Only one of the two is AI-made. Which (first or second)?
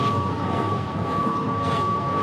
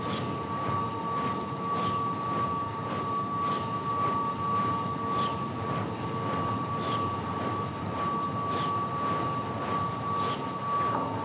first